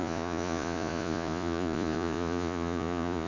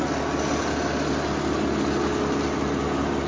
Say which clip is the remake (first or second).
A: first